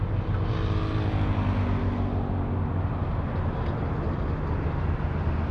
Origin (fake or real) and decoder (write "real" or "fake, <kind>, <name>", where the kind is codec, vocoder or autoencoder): real